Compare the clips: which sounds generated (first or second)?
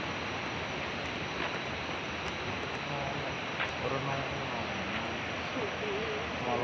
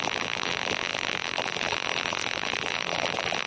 second